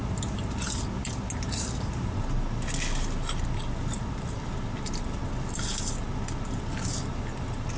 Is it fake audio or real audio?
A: real